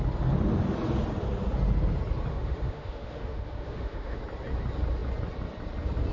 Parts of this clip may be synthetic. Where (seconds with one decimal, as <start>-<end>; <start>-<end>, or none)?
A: 2.3-4.2